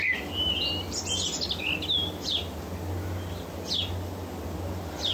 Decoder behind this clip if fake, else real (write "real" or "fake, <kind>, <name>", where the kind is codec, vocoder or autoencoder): real